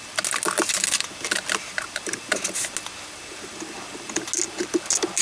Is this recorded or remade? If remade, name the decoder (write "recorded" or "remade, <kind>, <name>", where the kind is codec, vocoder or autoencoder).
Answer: recorded